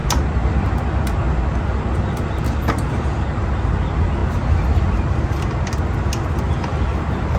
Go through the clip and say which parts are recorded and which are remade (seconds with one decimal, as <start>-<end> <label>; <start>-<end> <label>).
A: 0.0-7.4 recorded